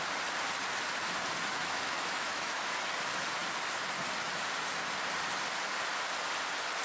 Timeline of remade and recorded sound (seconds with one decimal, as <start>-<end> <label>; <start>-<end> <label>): 0.0-1.6 recorded; 1.6-2.7 remade; 2.7-6.8 recorded